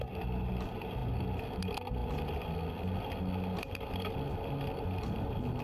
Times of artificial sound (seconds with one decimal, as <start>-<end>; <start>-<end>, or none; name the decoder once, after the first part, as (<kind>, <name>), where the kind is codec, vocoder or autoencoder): none